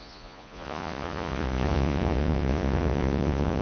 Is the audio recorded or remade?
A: remade